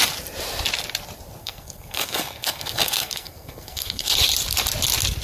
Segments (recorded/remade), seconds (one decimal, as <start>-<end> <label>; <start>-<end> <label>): 0.0-1.4 recorded; 1.4-4.1 remade; 4.1-5.2 recorded